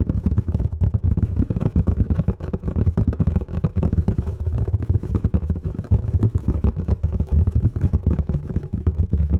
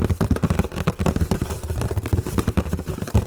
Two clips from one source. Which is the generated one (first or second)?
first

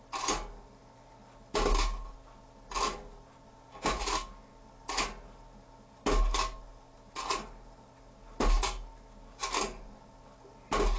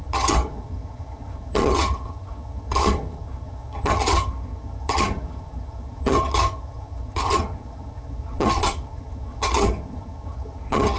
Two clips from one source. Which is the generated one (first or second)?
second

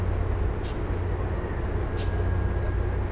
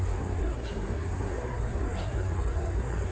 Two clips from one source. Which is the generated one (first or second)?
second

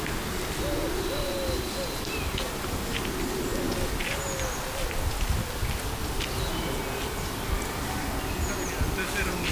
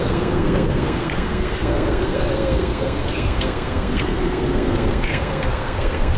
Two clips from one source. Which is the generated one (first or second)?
second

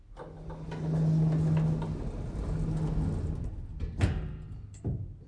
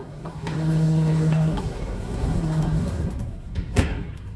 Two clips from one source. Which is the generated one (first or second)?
second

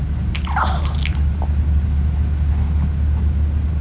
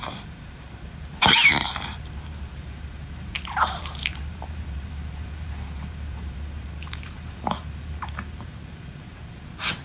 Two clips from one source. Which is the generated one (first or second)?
second